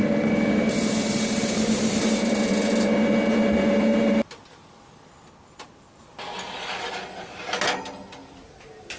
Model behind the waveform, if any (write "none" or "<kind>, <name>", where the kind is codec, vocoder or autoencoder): none